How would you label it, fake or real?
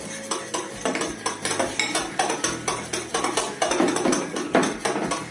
real